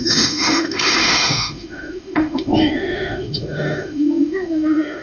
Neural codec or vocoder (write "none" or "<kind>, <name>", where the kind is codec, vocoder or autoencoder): autoencoder, DAC-VAE